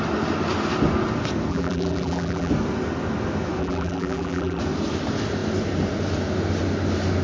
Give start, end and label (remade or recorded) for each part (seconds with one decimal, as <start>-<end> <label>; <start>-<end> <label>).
0.0-1.5 recorded; 1.5-2.5 remade; 2.5-3.6 recorded; 3.6-4.6 remade; 4.6-7.2 recorded

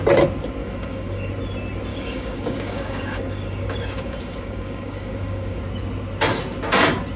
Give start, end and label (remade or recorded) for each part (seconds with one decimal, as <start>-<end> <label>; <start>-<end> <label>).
0.0-0.6 recorded; 0.6-1.3 remade; 1.3-1.9 recorded; 1.9-5.6 remade; 5.6-7.2 recorded